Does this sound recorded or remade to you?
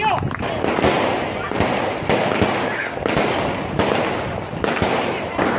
recorded